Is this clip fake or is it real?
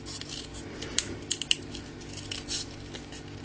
real